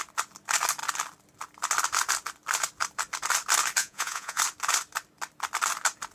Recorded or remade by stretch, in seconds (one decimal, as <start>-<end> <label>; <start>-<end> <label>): 0.0-3.8 recorded; 3.8-4.4 remade; 4.4-6.1 recorded